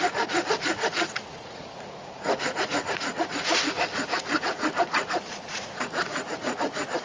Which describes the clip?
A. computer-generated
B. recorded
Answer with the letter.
A